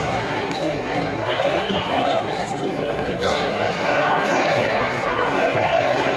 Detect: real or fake fake